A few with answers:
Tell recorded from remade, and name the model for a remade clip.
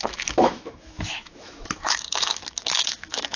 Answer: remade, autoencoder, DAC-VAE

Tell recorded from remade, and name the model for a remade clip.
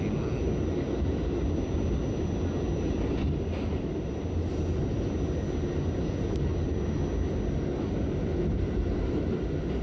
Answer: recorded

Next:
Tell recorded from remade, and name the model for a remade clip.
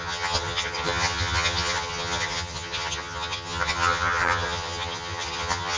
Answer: remade, vocoder, HiFi-GAN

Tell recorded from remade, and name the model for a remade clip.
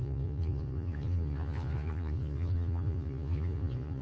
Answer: remade, vocoder, Vocos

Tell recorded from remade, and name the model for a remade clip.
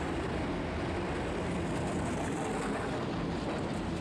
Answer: recorded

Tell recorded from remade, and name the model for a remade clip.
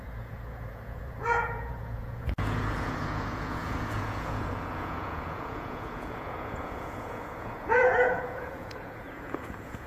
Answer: remade, vocoder, Vocos